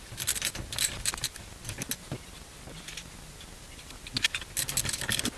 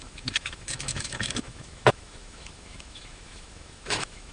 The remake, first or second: second